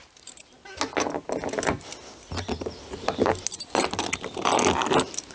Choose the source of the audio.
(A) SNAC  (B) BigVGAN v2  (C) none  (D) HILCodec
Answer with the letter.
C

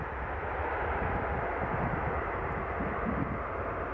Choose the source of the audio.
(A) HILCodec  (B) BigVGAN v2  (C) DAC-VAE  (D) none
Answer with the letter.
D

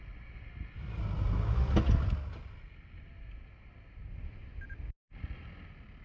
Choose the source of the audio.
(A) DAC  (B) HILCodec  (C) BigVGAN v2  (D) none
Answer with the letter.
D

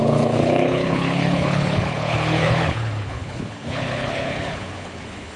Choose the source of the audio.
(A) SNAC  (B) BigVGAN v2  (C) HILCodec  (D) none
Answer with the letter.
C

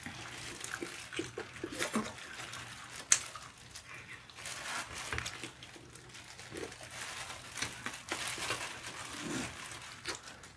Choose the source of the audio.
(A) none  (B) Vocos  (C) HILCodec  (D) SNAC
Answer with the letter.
A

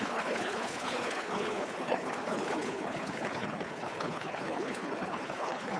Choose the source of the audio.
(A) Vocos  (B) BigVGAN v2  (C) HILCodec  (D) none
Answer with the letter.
C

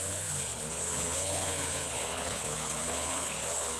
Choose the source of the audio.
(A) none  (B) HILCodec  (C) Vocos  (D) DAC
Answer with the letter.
B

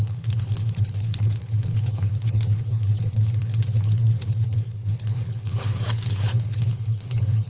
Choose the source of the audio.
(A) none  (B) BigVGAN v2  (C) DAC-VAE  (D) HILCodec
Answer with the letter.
D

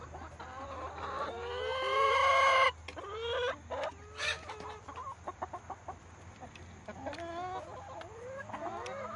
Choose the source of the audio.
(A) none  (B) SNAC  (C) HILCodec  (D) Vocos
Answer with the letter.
A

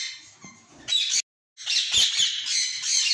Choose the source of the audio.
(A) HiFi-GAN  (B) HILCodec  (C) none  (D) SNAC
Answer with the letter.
C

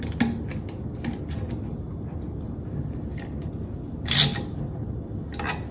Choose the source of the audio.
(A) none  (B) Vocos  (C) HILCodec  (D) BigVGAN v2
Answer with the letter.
A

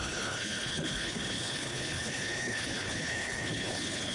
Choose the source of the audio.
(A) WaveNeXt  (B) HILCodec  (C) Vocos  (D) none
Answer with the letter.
B